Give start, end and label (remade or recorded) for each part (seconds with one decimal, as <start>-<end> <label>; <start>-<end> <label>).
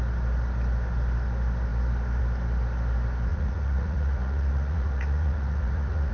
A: 0.0-3.3 recorded; 3.3-6.1 remade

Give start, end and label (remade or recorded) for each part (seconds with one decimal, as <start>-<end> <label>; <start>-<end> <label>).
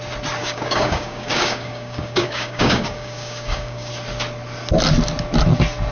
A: 0.0-0.4 recorded; 0.4-3.9 remade; 3.9-5.9 recorded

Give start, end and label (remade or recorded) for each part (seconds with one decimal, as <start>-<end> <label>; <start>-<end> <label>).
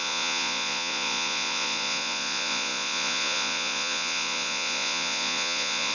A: 0.0-5.9 remade